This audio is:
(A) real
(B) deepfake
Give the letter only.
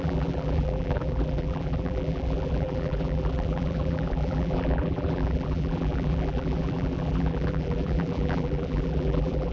B